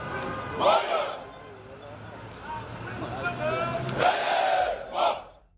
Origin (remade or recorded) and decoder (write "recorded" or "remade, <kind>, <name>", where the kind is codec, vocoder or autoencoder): recorded